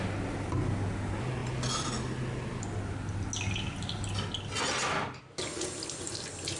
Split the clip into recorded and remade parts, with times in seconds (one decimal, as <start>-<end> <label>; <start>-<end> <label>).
0.0-6.6 recorded